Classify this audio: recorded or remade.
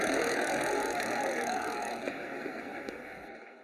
remade